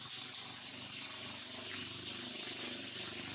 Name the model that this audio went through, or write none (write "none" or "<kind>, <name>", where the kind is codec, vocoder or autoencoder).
none